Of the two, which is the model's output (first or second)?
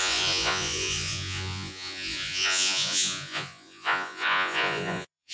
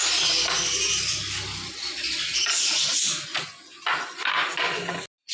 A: first